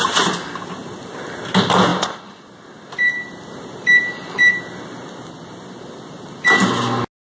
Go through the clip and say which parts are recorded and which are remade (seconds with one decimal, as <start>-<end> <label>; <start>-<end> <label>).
0.0-7.3 recorded